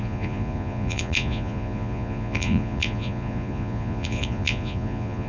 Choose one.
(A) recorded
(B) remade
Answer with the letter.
B